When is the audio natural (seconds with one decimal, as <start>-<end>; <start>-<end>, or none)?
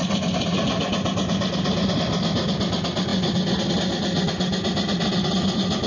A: 0.0-5.9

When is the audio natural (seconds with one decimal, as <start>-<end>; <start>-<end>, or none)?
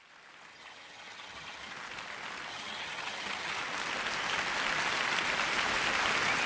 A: 0.0-0.5; 1.7-2.5; 3.6-6.5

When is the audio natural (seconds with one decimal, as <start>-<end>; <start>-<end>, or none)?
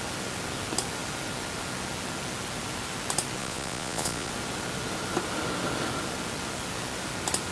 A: 0.0-3.4; 4.3-7.5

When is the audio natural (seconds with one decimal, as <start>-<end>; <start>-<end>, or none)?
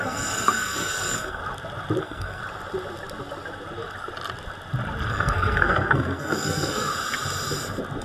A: 1.4-2.0; 2.4-5.1; 6.9-8.0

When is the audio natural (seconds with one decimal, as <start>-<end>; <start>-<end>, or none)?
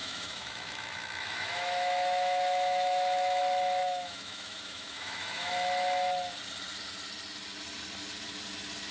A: 3.4-3.8; 5.5-8.9